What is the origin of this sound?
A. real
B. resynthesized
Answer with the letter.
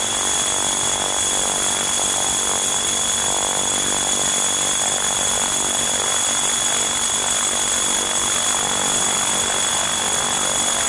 A